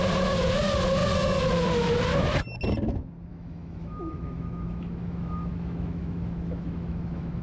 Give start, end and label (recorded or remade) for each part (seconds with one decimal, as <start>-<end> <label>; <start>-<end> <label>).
0.0-3.3 recorded; 3.3-7.4 remade